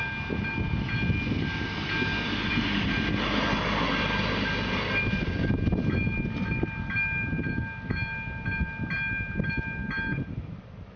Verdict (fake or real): real